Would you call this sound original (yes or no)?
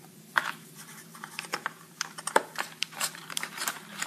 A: no